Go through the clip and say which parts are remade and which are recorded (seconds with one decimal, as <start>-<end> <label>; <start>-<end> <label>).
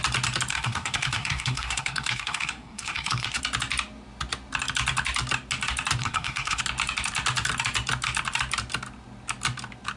0.0-0.5 recorded; 0.5-3.4 remade; 3.4-6.0 recorded; 6.0-6.6 remade; 6.6-10.0 recorded